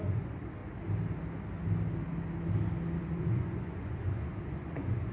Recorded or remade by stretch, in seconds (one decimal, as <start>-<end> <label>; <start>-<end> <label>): 0.0-0.6 remade; 0.6-3.0 recorded; 3.0-5.1 remade